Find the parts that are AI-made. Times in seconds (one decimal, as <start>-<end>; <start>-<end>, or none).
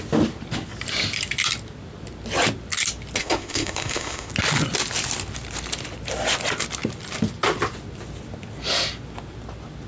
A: 3.2-4.3